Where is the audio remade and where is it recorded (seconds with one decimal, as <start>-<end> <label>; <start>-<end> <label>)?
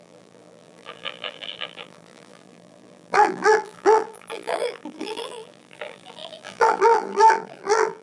0.0-8.0 remade